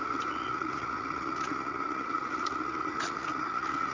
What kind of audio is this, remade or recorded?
remade